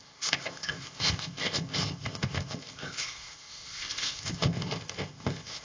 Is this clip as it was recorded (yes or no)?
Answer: no